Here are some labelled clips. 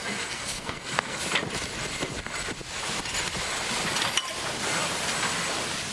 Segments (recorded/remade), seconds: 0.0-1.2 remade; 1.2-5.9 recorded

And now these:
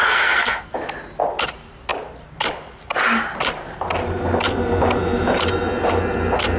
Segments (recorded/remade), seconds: 0.0-0.7 remade; 0.7-6.6 recorded

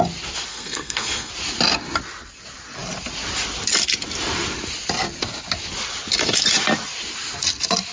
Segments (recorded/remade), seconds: 0.0-0.5 recorded; 0.5-1.3 remade; 1.3-7.9 recorded

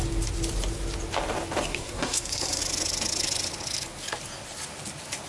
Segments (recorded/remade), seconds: 0.0-1.7 recorded; 1.7-2.6 remade; 2.6-5.3 recorded